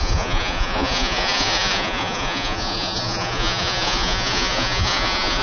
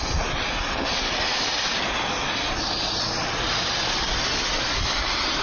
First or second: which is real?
second